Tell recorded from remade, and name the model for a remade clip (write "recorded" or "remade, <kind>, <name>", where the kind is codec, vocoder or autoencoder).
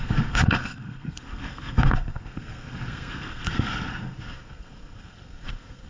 remade, codec, SNAC